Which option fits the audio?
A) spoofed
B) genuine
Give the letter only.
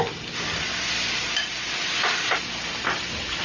B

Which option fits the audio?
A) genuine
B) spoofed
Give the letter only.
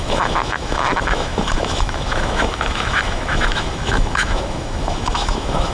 B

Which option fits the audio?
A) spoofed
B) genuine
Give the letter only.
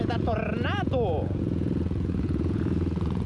A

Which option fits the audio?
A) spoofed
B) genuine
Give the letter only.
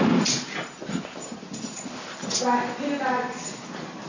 B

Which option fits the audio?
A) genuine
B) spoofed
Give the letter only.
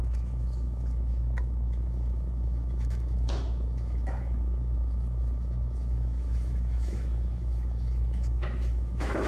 B